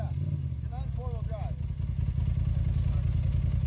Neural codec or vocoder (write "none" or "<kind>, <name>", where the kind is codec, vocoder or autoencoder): none